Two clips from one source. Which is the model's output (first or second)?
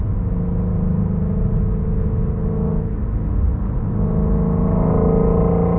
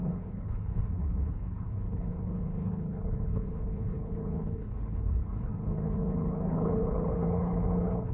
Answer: second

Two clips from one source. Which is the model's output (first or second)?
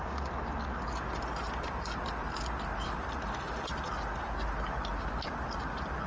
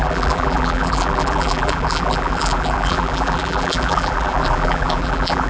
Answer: second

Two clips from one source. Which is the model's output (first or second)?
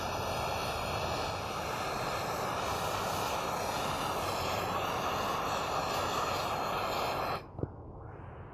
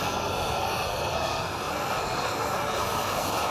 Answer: second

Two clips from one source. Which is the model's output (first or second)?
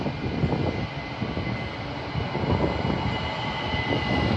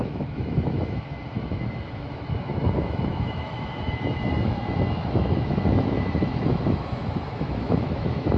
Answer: second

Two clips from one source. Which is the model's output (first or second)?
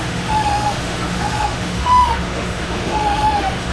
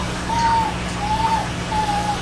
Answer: first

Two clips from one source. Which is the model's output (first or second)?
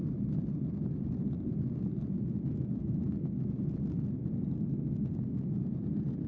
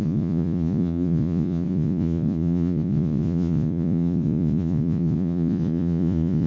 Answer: second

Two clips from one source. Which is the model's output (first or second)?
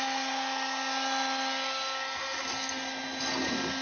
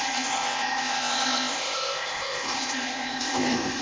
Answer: second